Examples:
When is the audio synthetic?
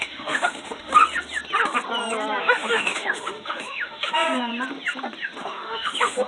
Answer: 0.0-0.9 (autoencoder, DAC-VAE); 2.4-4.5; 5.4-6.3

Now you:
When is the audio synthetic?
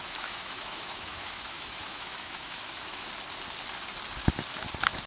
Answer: 0.0-3.1 (autoencoder, DAC-VAE)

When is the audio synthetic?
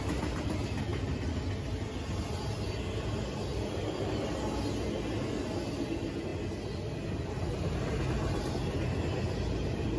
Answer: none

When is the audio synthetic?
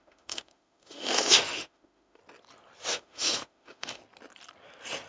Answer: 0.0-2.2 (autoencoder, DAC-VAE); 2.9-4.0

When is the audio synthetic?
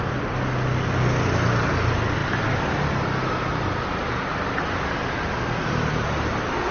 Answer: none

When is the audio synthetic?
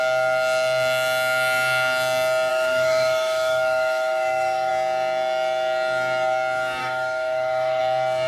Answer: 2.5-4.7 (autoencoder, DAC-VAE); 6.8-7.8